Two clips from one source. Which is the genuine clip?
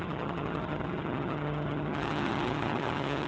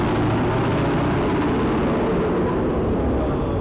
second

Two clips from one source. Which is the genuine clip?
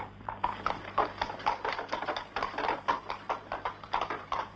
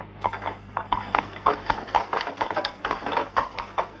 first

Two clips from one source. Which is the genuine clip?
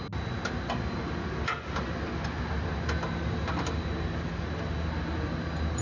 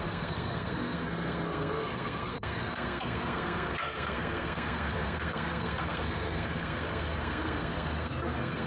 first